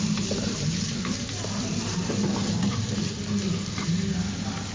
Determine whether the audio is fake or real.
real